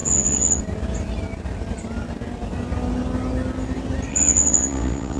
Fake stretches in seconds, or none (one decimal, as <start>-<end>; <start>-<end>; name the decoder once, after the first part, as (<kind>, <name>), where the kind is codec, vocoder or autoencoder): 0.0-0.6 (vocoder, WaveNeXt); 4.1-5.2